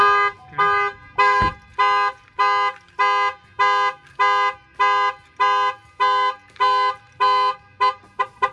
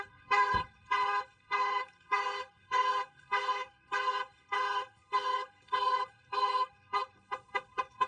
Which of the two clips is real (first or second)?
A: first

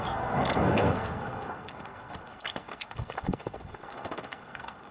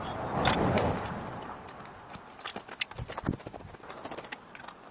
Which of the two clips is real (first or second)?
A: second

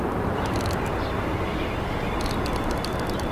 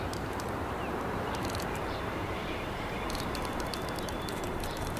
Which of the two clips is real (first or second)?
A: first